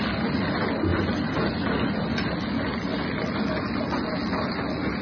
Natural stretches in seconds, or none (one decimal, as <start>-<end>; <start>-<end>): 0.0-5.0